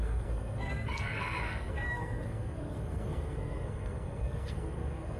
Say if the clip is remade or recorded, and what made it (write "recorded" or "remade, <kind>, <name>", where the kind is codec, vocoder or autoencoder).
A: remade, codec, SNAC